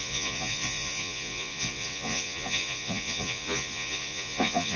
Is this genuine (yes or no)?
no